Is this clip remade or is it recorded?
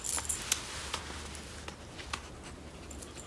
recorded